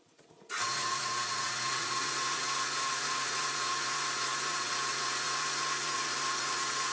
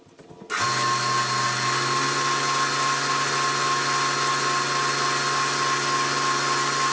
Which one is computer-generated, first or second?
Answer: first